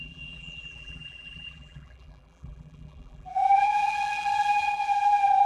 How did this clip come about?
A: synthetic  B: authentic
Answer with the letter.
A